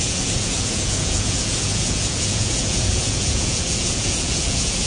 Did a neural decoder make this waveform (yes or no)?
yes